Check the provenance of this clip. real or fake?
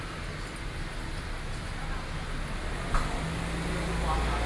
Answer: real